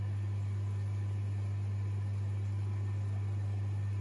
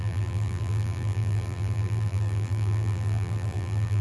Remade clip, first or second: second